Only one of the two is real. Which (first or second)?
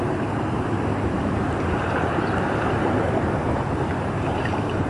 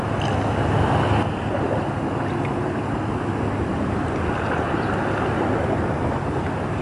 second